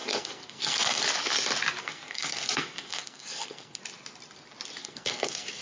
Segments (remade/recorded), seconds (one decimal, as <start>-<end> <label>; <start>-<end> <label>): 0.0-1.0 remade; 1.0-1.8 recorded; 1.8-3.8 remade; 3.8-4.8 recorded; 4.8-5.6 remade